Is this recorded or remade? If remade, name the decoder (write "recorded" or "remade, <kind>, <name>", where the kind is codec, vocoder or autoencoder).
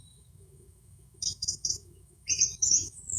remade, autoencoder, DAC-VAE